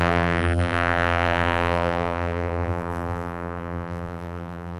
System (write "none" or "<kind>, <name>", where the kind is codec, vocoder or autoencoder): vocoder, BigVGAN v2